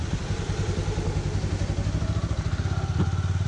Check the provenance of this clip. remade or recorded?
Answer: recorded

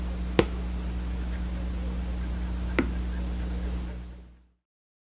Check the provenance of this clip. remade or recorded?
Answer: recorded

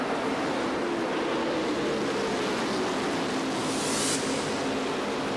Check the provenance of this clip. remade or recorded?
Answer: recorded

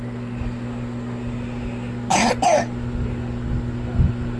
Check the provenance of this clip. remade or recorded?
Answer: recorded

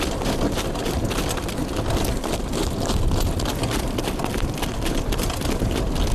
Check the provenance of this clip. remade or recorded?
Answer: recorded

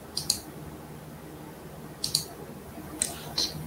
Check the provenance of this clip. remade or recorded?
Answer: recorded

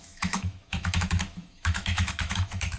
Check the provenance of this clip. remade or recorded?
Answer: remade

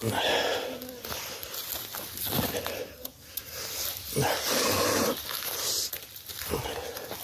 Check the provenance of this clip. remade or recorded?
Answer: recorded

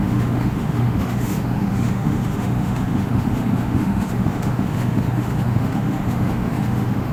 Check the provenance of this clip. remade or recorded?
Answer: remade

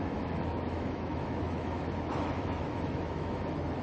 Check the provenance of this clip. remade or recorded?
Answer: remade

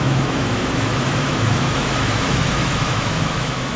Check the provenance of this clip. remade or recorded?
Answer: remade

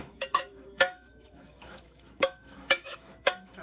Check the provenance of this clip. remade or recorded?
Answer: remade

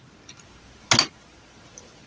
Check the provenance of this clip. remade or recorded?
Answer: recorded